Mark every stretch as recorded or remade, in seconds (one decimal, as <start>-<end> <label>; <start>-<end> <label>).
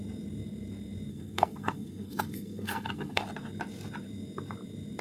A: 0.0-1.1 recorded; 1.1-3.2 remade; 3.2-5.0 recorded